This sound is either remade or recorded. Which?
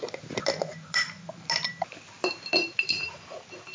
recorded